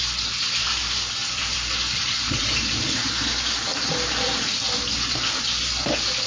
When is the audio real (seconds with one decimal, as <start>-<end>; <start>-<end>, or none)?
0.0-1.2; 2.4-6.3